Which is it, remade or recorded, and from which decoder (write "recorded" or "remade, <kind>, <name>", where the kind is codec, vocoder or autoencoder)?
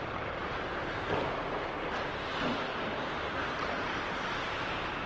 recorded